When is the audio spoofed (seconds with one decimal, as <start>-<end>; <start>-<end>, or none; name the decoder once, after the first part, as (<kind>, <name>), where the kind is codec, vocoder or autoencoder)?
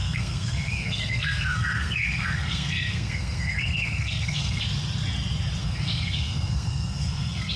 0.0-4.6 (codec, SNAC); 5.6-7.6